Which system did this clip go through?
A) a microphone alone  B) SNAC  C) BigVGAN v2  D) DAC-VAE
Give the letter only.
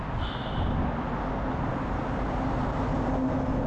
A